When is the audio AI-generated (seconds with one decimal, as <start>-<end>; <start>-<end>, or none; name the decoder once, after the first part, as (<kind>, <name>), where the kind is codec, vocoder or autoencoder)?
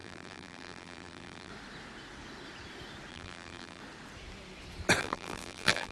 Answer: 0.0-1.5 (vocoder, BigVGAN v2); 3.1-3.8; 5.0-5.9